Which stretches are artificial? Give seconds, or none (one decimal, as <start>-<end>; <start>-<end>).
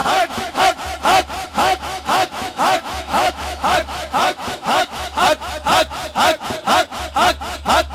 0.0-0.6; 1.5-5.2